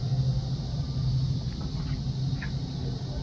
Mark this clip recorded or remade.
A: recorded